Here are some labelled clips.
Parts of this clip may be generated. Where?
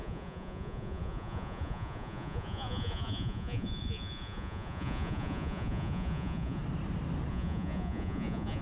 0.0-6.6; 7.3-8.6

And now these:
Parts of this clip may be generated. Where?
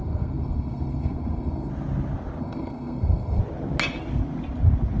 0.0-1.7; 2.4-3.4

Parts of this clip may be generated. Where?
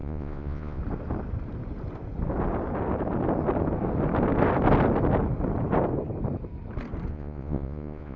0.0-0.8; 7.1-8.2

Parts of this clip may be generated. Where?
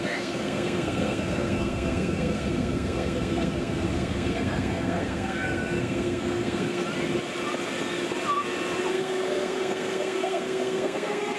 0.0-6.8; 8.9-11.4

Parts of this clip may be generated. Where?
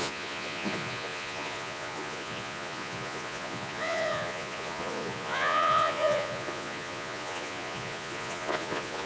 0.0-9.1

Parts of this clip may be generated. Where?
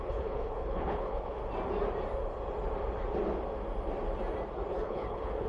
0.0-1.4; 4.7-5.5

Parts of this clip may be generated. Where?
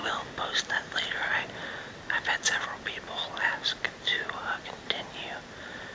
0.6-1.3; 3.9-5.9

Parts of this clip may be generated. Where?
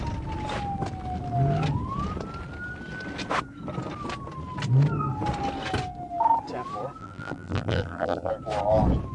7.0-8.3